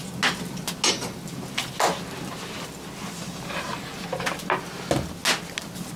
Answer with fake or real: real